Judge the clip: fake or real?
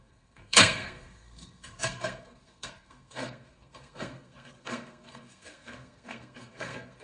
fake